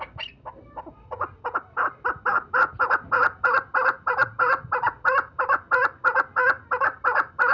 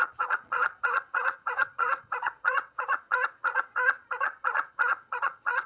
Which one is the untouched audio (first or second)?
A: first